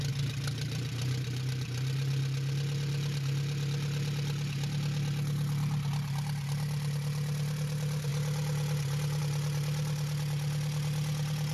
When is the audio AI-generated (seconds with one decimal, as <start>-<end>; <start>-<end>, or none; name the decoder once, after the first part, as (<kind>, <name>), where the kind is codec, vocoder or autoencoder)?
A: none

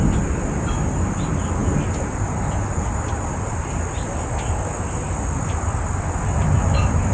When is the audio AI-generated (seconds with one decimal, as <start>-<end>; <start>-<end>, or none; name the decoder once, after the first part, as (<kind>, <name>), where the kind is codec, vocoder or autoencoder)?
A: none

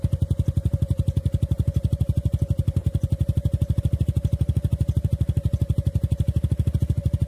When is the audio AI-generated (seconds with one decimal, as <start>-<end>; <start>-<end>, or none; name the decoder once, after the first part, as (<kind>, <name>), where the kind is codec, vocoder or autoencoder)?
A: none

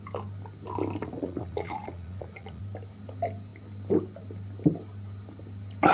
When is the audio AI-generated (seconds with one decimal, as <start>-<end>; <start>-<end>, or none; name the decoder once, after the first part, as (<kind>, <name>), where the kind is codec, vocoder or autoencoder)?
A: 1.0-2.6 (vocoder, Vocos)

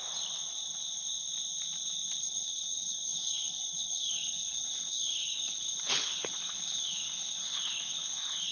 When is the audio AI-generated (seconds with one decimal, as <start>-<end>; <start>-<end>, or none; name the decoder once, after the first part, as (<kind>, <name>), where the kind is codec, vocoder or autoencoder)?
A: 2.2-8.5 (codec, HILCodec)

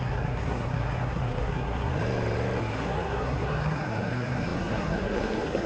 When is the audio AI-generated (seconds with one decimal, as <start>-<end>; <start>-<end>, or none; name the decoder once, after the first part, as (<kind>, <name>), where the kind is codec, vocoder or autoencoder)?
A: 0.0-1.9 (codec, SNAC); 2.6-5.7

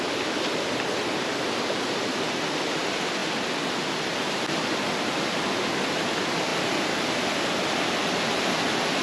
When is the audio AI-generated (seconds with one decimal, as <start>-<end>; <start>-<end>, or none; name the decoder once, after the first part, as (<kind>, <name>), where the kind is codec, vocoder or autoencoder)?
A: none

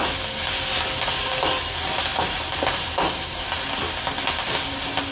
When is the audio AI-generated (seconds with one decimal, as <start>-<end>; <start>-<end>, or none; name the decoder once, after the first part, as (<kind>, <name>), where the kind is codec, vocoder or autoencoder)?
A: none